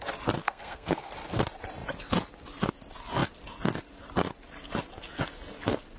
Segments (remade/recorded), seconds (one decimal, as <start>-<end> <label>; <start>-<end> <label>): 0.0-0.4 recorded; 0.4-1.1 remade; 1.1-6.0 recorded